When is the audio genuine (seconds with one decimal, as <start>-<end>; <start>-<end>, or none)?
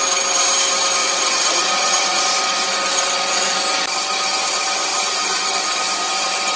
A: 0.0-1.0; 2.2-6.6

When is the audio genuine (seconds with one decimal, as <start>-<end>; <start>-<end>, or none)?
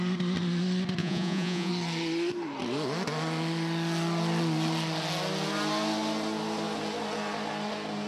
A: 0.0-1.0; 1.7-8.1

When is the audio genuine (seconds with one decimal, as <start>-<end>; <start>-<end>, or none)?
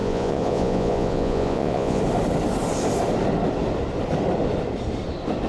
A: 2.0-5.5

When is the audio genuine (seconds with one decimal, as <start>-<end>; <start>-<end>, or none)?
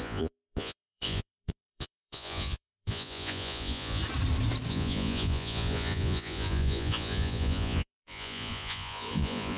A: 4.0-4.7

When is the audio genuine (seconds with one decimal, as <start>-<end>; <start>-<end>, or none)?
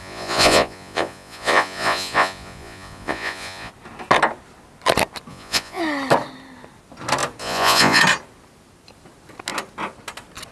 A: 3.7-5.3; 5.8-7.4; 8.0-10.5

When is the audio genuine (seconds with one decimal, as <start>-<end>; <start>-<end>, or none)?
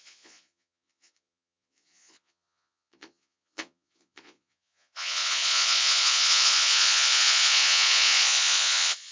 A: none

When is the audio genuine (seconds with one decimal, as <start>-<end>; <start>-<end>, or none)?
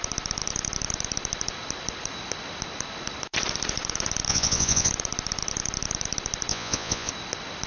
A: 0.0-4.3; 4.9-6.5; 7.1-7.7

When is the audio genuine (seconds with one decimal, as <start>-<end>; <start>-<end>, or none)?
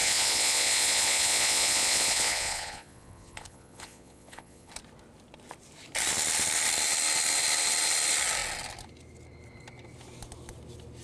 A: 4.7-11.0